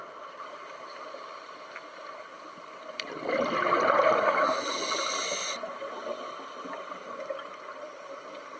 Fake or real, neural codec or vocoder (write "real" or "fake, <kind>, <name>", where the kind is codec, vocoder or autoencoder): real